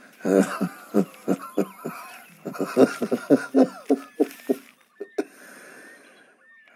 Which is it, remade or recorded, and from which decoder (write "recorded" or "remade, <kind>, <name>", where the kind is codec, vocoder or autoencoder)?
recorded